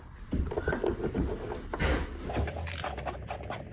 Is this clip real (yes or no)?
no